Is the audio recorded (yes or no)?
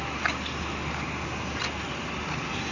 yes